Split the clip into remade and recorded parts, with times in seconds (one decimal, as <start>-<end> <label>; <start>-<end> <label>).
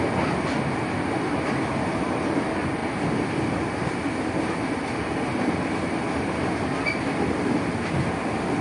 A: 0.0-8.6 recorded